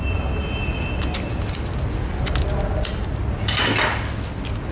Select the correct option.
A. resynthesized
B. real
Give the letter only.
B